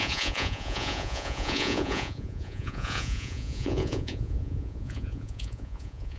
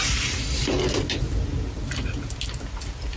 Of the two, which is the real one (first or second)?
second